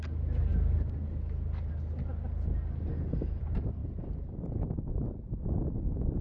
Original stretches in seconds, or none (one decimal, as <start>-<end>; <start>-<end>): 0.0-2.9; 3.4-6.2